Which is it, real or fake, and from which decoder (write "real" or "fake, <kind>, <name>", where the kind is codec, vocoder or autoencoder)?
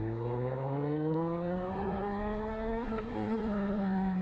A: fake, codec, SNAC